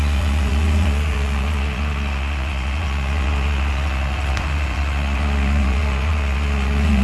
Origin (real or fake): fake